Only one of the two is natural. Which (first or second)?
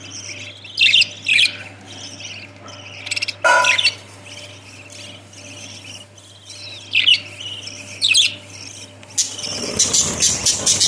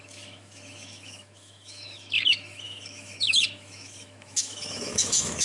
first